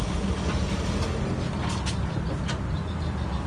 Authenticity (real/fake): real